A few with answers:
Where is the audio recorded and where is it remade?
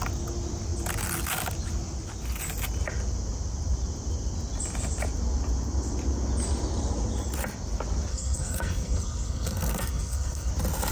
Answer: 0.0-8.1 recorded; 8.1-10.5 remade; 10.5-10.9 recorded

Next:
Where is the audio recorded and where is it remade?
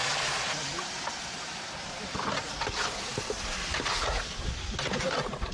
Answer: 0.0-5.5 recorded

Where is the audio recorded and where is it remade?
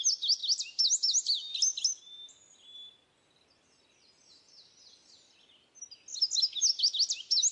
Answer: 0.0-7.5 recorded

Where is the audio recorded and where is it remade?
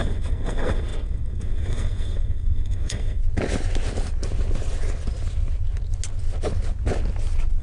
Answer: 0.0-3.2 remade; 3.2-7.6 recorded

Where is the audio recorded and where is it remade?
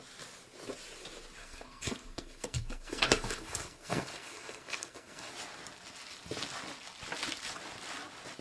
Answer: 0.0-1.4 recorded; 1.4-5.3 remade; 5.3-8.4 recorded